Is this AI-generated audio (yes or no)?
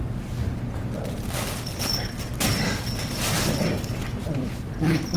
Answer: no